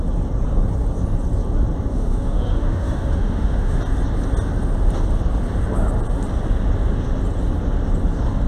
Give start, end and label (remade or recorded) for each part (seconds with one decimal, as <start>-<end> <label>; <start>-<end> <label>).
0.0-1.9 recorded; 1.9-3.8 remade; 3.8-8.5 recorded